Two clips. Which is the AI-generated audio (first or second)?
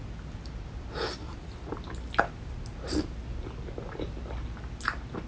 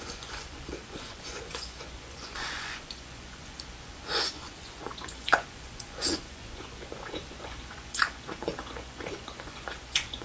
second